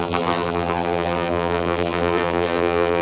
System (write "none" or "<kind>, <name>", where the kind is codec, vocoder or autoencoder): vocoder, BigVGAN v2